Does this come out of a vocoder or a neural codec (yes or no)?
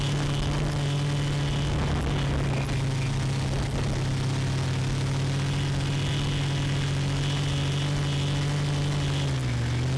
no